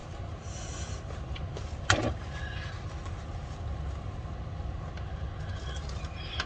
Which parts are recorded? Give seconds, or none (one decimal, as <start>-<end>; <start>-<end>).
0.0-6.5